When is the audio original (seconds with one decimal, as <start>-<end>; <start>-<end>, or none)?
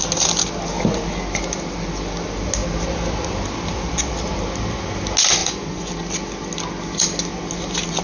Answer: 0.0-5.4; 5.9-8.0